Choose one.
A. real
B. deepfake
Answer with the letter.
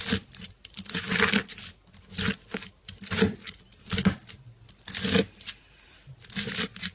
A